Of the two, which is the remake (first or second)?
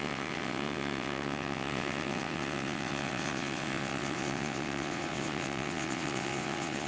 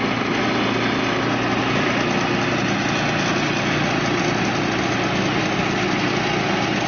first